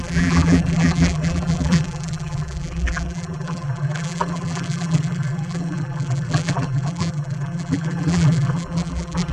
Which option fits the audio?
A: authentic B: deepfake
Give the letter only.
B